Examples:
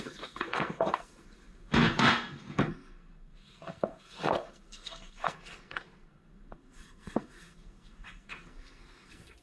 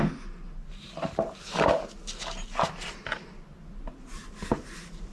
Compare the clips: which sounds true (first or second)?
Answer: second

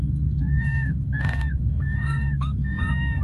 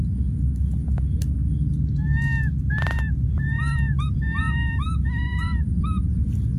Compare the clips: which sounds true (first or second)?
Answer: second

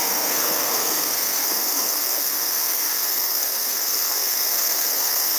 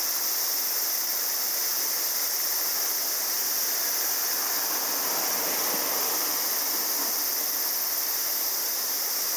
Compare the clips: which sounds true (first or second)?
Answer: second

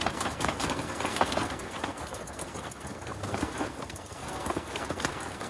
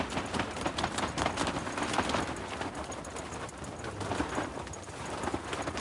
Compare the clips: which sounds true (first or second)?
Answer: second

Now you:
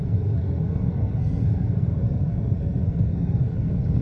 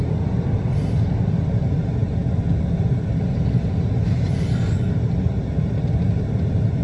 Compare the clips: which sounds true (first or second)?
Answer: second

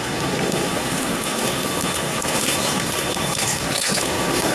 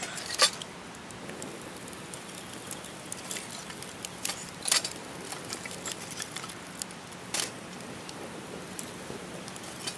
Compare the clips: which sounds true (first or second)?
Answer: second